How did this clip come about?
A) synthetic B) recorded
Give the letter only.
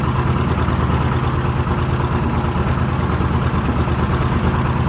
B